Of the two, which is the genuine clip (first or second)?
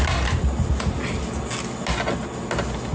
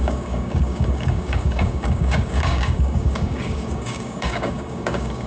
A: first